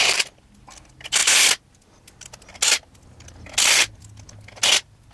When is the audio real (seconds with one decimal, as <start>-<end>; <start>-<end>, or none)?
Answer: 0.0-5.1